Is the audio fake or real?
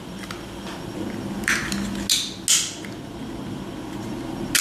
real